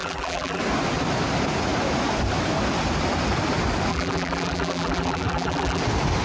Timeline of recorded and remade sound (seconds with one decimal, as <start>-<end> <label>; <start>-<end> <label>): 0.0-0.6 remade; 0.6-3.9 recorded; 3.9-5.8 remade; 5.8-6.2 recorded